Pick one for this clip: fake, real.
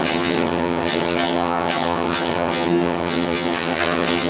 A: fake